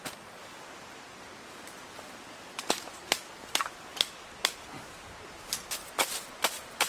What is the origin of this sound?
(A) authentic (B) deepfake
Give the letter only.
A